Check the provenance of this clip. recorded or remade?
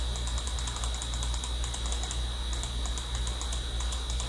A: recorded